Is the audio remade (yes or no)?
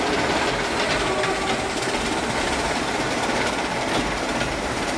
no